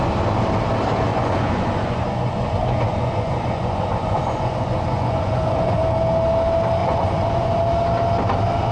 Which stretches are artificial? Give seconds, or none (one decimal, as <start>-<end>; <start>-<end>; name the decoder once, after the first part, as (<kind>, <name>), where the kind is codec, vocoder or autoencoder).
1.1-5.8 (vocoder, Vocos); 6.8-7.6